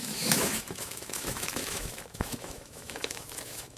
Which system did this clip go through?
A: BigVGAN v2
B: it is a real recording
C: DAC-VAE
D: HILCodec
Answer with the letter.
C